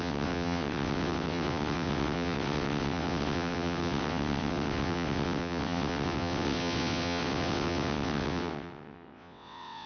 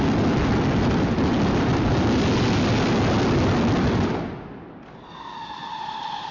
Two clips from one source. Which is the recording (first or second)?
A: second